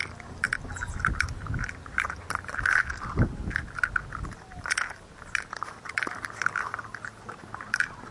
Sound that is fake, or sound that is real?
real